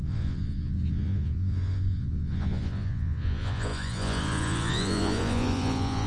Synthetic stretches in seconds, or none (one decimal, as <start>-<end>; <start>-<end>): 0.0-6.1